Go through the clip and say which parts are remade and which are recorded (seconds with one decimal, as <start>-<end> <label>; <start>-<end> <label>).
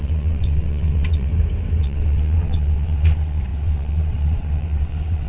0.0-1.3 remade; 1.3-1.8 recorded; 1.8-5.3 remade